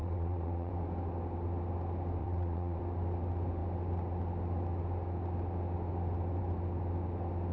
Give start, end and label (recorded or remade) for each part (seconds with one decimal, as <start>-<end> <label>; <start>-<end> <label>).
0.0-0.7 remade; 0.7-2.2 recorded; 2.2-2.8 remade; 2.8-7.5 recorded